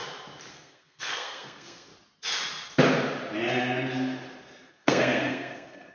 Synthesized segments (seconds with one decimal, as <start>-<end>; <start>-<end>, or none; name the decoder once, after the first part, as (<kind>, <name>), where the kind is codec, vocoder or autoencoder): 0.5-1.9 (codec, SNAC); 4.7-5.9